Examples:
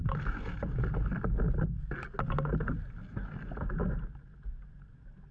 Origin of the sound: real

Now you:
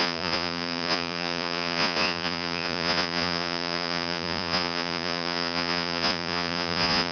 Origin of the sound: fake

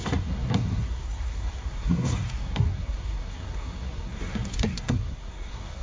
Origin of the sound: fake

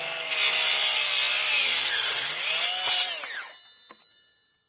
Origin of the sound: real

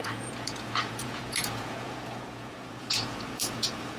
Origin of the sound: fake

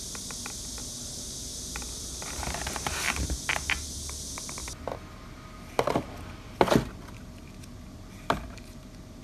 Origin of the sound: real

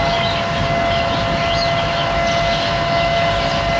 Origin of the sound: real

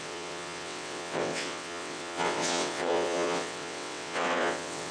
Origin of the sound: fake